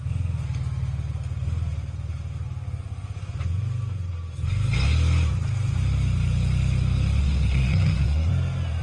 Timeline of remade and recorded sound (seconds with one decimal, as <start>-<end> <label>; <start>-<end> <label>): 0.0-7.2 recorded; 7.2-8.3 remade; 8.3-8.8 recorded